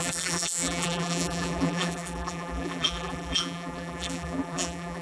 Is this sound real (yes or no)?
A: no